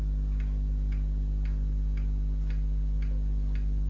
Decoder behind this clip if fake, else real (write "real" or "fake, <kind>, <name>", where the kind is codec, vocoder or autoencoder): real